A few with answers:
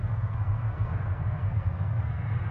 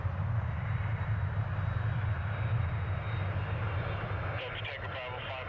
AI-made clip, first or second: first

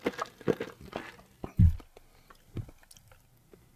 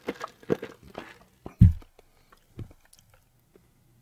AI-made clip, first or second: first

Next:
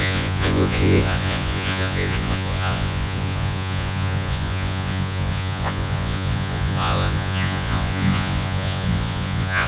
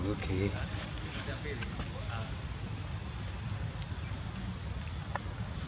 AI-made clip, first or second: first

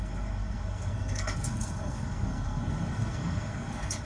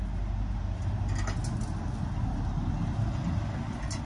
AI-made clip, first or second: first